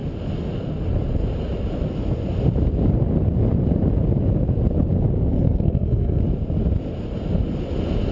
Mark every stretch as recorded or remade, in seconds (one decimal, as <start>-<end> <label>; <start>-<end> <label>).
0.0-5.3 recorded; 5.3-6.2 remade; 6.2-8.1 recorded